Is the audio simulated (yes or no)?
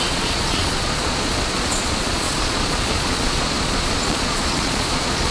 yes